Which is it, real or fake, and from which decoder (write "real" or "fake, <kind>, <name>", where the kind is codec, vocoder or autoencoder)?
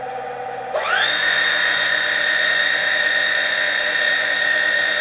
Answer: fake, vocoder, Vocos